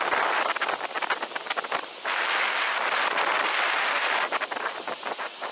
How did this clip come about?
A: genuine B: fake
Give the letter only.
A